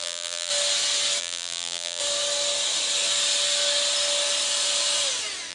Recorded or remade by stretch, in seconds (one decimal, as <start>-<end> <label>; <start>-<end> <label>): 0.0-0.5 remade; 0.5-1.2 recorded; 1.2-2.0 remade; 2.0-5.5 recorded